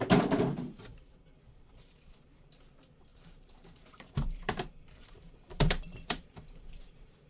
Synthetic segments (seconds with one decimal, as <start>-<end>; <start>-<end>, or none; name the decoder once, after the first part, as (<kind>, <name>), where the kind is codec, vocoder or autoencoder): 3.1-7.3 (vocoder, BigVGAN v2)